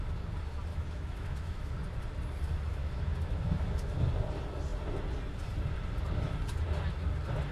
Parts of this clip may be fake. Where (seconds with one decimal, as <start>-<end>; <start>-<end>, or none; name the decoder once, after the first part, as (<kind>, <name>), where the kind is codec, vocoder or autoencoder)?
0.7-1.7 (autoencoder, DAC-VAE); 2.7-4.0